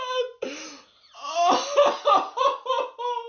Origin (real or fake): real